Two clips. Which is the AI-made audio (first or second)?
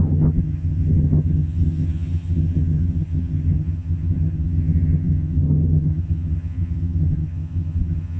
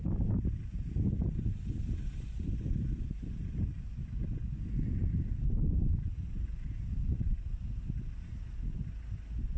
first